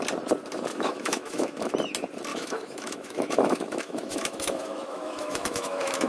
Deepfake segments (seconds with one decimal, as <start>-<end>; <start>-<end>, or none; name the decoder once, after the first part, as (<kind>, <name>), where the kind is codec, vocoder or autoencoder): 0.7-1.7 (autoencoder, DAC-VAE); 2.3-6.1